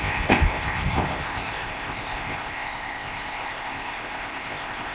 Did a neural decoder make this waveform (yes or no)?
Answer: yes